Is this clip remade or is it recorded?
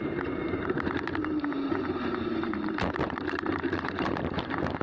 remade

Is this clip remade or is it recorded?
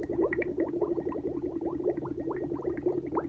recorded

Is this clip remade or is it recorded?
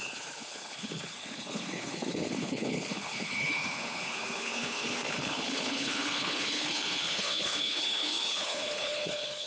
remade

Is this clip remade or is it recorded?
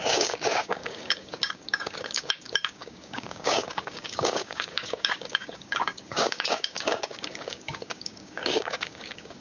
remade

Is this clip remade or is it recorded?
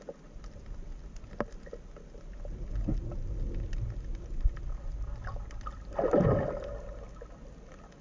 recorded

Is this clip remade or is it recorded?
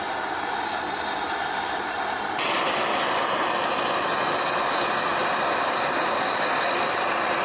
recorded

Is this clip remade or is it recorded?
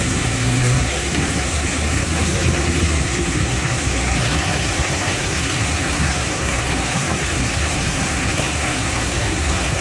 remade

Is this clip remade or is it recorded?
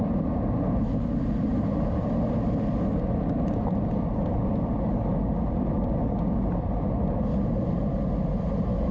recorded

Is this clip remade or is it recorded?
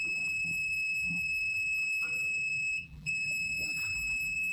remade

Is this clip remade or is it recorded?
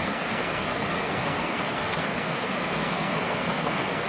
remade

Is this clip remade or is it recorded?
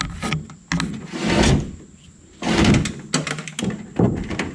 recorded